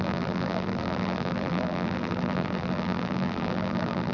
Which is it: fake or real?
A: fake